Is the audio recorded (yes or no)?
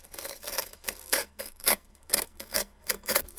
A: no